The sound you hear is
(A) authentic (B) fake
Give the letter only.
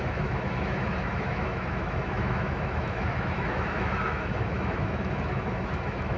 B